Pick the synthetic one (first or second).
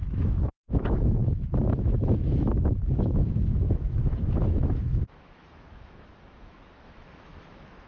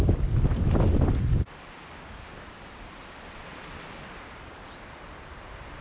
first